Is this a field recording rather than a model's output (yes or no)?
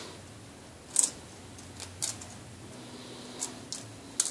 yes